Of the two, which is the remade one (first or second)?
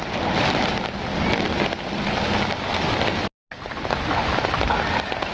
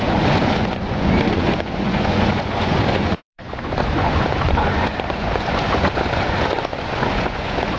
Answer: second